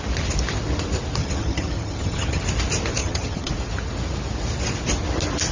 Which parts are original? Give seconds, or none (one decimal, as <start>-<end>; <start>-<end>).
0.0-1.2; 2.4-3.0; 3.5-5.5

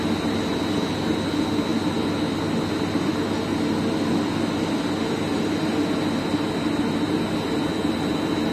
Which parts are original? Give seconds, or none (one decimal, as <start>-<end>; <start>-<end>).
0.0-8.5

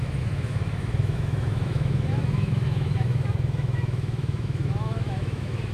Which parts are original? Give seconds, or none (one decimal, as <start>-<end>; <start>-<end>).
none

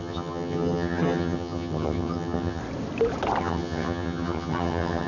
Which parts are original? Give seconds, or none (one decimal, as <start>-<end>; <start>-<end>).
2.6-3.4

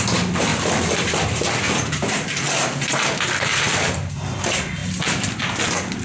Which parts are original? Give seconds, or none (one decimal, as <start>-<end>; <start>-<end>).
0.0-0.5; 2.4-4.8; 5.4-6.0

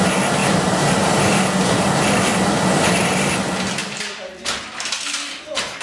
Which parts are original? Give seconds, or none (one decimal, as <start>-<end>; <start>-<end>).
0.0-0.4; 1.9-3.8; 4.4-5.8